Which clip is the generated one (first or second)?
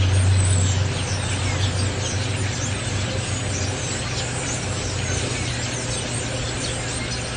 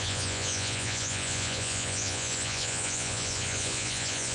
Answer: second